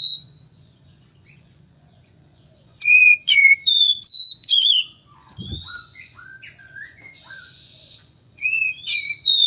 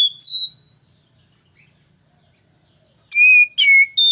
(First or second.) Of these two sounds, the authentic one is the second